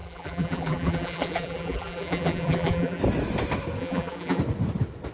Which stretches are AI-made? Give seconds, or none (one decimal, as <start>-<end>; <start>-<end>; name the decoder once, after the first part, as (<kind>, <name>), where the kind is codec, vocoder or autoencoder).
0.0-3.0 (vocoder, BigVGAN v2); 3.8-4.4